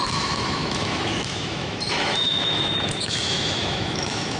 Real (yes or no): no